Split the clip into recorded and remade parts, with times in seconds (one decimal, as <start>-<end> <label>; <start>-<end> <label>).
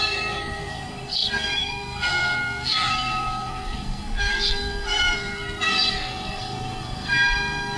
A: 0.0-7.8 remade